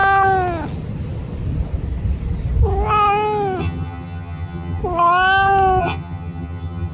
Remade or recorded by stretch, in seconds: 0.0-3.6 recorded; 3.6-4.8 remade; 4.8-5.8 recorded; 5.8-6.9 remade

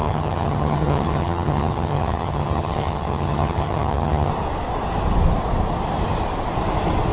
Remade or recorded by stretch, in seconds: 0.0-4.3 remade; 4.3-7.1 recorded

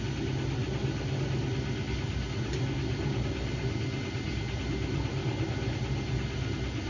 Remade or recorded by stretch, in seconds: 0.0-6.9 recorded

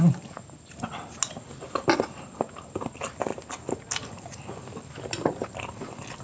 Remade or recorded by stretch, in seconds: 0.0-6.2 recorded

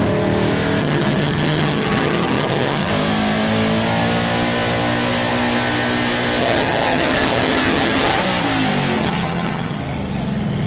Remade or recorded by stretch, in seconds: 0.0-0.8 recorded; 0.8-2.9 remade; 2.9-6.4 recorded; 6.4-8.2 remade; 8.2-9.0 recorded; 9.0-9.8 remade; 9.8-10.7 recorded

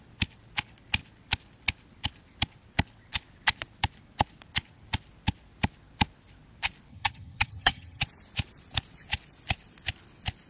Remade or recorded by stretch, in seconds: 0.0-6.9 recorded; 6.9-8.0 remade; 8.0-10.5 recorded

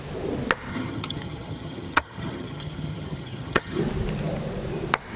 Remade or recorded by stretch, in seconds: 0.0-0.7 recorded; 0.7-3.8 remade; 3.8-5.2 recorded